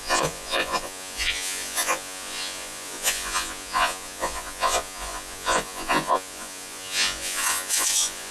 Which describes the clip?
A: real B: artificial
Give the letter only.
B